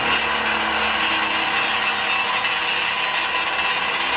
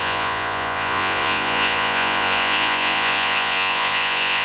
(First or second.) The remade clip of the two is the second